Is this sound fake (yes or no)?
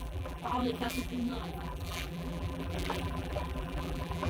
yes